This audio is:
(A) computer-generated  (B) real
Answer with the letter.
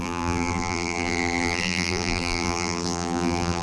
A